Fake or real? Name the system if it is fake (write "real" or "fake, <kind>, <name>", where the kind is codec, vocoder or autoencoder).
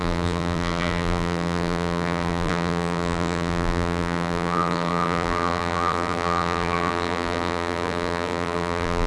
fake, vocoder, BigVGAN v2